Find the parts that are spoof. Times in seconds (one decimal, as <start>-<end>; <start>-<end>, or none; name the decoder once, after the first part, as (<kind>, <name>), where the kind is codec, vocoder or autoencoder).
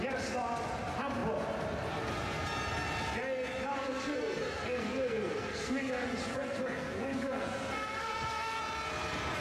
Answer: 3.7-8.6 (codec, SNAC)